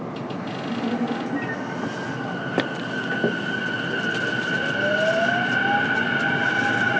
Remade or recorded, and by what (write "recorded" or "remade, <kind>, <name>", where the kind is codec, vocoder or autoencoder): recorded